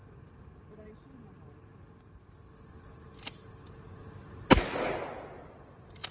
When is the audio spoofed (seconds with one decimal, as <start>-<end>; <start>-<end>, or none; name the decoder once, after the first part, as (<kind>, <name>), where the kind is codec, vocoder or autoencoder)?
none